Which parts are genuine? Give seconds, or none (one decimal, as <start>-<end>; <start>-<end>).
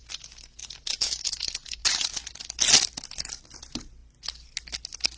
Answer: 0.0-5.2